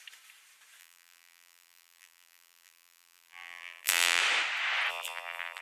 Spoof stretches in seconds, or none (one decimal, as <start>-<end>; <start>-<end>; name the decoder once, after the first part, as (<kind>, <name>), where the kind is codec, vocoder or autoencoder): 0.8-4.2 (vocoder, BigVGAN v2); 4.9-5.6